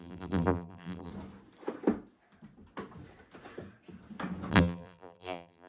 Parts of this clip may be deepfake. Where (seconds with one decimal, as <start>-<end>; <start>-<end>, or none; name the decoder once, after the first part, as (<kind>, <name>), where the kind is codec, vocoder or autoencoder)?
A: 0.0-1.1 (vocoder, BigVGAN v2); 4.5-5.7